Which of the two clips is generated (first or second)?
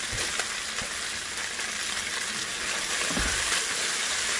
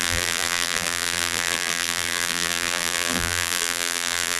second